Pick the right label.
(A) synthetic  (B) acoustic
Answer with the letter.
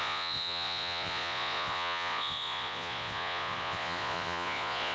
A